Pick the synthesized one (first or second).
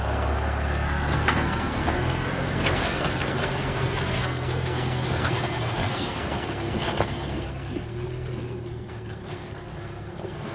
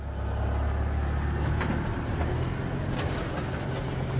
first